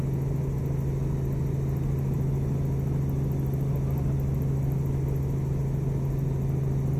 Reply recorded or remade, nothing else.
recorded